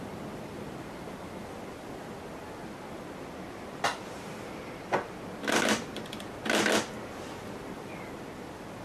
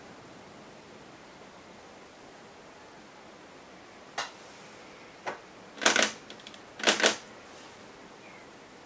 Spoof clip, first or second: first